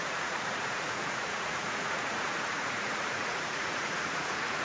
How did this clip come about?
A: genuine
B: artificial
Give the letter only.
B